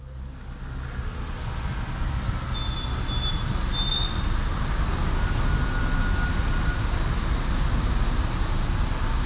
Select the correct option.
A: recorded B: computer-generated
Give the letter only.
A